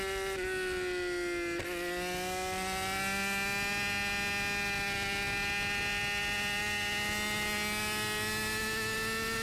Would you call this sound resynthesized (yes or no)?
no